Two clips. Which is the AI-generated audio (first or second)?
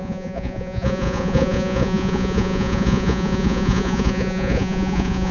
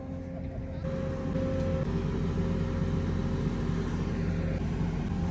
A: first